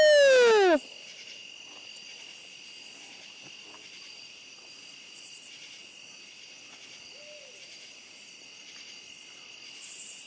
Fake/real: real